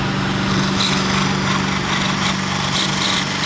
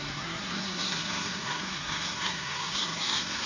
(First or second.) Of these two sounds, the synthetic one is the second